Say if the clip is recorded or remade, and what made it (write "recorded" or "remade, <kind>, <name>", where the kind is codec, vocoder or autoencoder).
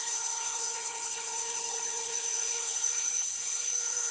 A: remade, codec, HILCodec